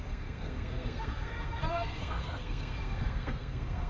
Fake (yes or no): yes